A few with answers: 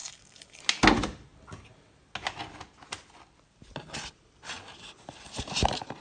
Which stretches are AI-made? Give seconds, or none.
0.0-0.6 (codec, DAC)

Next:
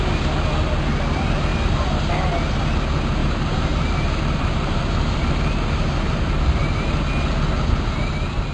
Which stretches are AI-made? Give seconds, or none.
3.2-7.1 (vocoder, BigVGAN v2)

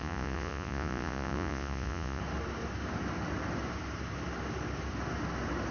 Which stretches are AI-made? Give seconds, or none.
0.0-2.2 (vocoder, Vocos)

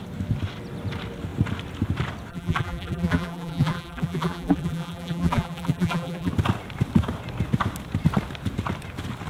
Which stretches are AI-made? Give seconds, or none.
2.3-6.3 (vocoder, BigVGAN v2)

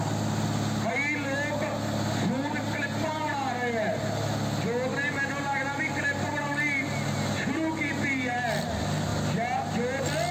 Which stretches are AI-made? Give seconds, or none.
none

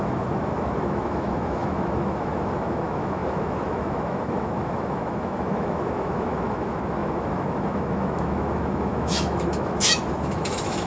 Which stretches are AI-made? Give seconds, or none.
0.0-10.9 (autoencoder, DAC-VAE)

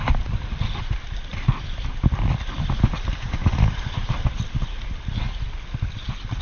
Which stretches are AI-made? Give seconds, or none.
1.3-5.1 (vocoder, BigVGAN v2)